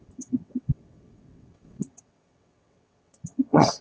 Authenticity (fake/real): fake